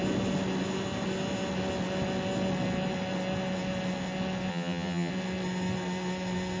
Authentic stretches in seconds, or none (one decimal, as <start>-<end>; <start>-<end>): 0.0-4.5; 5.1-6.6